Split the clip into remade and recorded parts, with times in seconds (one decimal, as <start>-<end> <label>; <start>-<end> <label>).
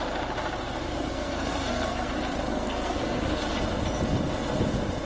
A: 0.0-0.9 recorded; 0.9-2.1 remade; 2.1-2.5 recorded; 2.5-3.4 remade; 3.4-5.0 recorded